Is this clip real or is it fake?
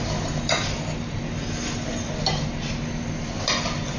real